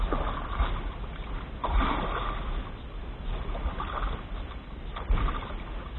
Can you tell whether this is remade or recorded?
recorded